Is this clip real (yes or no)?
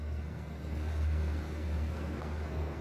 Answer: no